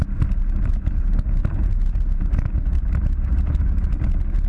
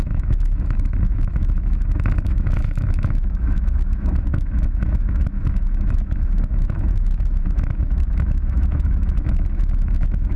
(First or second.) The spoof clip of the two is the second